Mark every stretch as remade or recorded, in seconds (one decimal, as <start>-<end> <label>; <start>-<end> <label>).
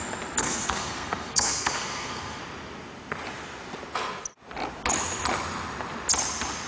0.0-0.4 recorded; 0.4-2.4 remade; 2.4-6.7 recorded